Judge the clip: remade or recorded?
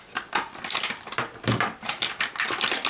remade